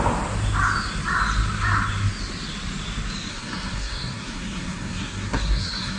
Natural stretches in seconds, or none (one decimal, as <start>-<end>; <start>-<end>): 0.0-3.3